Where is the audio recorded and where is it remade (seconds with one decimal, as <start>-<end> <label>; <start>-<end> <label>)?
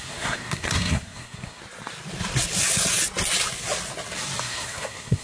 0.0-1.6 remade; 1.6-4.4 recorded; 4.4-5.2 remade